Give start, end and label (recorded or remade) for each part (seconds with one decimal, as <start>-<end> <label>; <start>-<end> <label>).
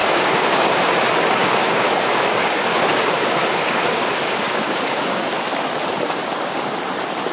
0.0-0.9 remade; 0.9-1.4 recorded; 1.4-5.2 remade; 5.2-6.2 recorded; 6.2-6.8 remade; 6.8-7.3 recorded